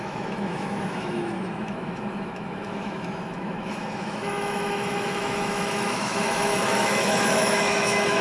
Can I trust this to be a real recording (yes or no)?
no